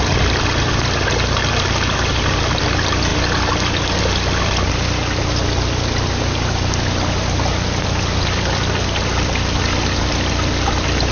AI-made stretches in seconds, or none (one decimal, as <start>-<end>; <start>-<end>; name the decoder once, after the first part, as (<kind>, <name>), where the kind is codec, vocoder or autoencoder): none

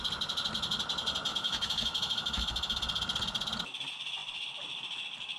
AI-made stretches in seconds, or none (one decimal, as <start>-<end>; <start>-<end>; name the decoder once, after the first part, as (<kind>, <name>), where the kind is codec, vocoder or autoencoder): 1.3-2.8 (autoencoder, DAC-VAE)

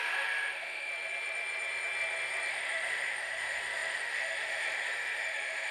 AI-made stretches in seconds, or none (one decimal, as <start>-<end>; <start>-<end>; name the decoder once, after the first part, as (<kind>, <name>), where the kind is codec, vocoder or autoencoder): 0.0-0.9 (autoencoder, DAC-VAE); 2.5-5.7

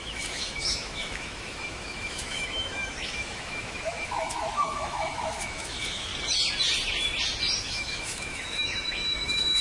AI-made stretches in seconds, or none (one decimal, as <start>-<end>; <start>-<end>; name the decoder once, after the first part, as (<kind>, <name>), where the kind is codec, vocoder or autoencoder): 0.0-6.1 (autoencoder, DAC-VAE); 7.6-9.6

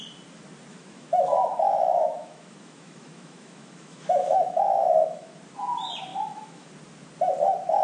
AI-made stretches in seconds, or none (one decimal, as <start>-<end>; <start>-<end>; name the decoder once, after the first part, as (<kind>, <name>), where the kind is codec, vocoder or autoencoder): 0.7-5.4 (autoencoder, DAC-VAE); 6.1-6.7

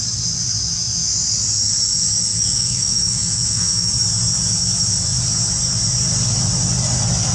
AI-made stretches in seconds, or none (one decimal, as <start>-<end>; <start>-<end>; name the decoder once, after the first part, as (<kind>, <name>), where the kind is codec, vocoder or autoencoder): 2.3-3.9 (autoencoder, DAC-VAE)

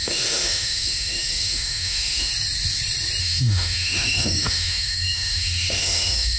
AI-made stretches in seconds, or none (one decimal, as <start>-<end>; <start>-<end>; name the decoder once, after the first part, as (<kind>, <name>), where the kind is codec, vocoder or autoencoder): 0.0-2.3 (autoencoder, DAC-VAE); 3.2-6.4

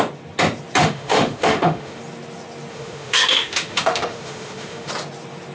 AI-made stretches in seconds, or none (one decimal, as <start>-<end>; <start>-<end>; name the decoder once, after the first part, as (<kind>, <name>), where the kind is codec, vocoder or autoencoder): 0.8-2.0 (autoencoder, DAC-VAE); 2.7-4.9